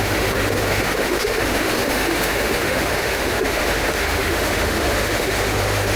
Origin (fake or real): fake